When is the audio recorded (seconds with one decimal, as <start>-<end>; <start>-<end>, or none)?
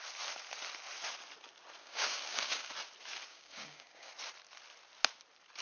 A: 0.0-1.8; 2.7-3.3; 4.1-5.6